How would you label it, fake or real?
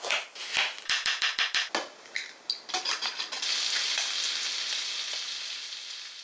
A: real